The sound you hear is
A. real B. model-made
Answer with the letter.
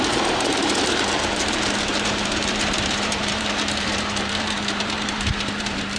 B